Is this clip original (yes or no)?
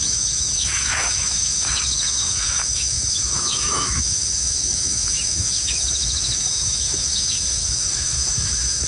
no